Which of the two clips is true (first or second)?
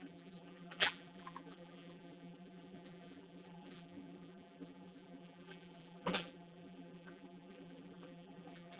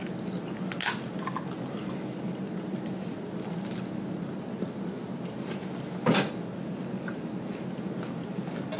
second